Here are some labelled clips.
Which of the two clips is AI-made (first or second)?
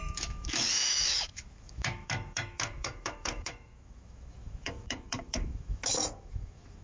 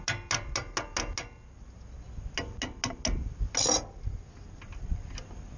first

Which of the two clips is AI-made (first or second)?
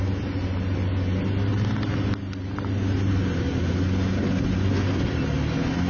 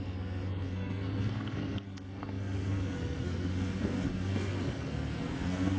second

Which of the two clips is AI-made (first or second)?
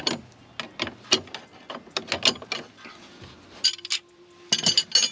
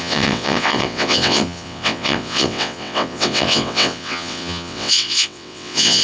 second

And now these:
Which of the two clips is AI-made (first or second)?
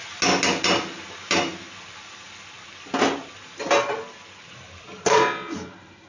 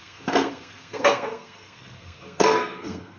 second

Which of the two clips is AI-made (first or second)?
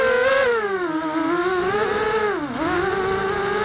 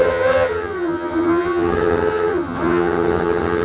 second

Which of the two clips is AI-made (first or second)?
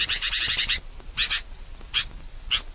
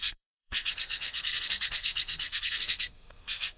second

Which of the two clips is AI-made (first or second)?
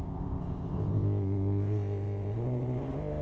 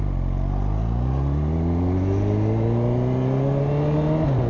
first